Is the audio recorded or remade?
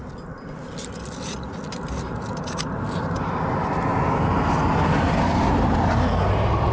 recorded